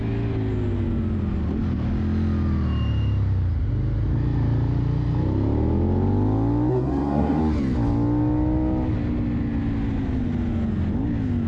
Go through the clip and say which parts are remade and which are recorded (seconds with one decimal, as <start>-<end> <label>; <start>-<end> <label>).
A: 0.0-6.7 recorded; 6.7-7.4 remade; 7.4-11.5 recorded